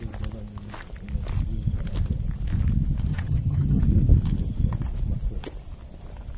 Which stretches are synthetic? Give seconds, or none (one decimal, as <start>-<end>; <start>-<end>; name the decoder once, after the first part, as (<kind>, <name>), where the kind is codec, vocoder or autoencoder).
3.1-3.8 (vocoder, HiFi-GAN)